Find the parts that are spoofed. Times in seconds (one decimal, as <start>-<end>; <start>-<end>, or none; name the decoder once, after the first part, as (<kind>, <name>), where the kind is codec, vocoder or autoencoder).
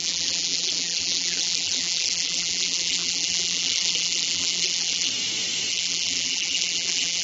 0.0-5.1 (vocoder, BigVGAN v2); 5.7-7.2